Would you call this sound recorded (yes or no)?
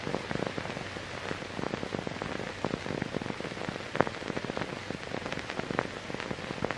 yes